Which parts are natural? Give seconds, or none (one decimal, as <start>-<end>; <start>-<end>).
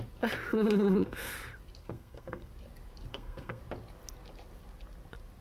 0.0-0.5; 1.3-1.8; 2.5-3.1; 3.6-5.4